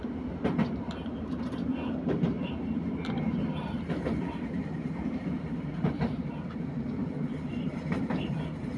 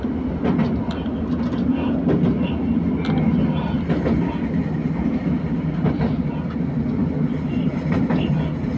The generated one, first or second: first